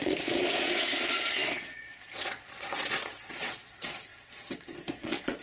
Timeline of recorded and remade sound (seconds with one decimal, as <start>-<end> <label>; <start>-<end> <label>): 0.0-5.4 remade